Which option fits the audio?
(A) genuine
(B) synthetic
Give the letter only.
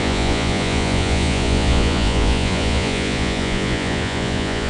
B